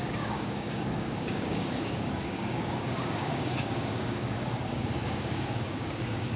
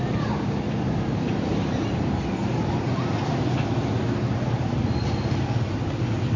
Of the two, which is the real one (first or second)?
second